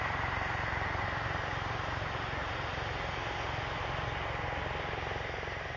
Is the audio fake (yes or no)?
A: no